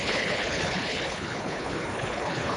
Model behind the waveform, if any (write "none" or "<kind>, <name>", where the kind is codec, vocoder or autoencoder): codec, HILCodec